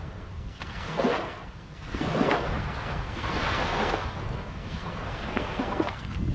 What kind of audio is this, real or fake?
fake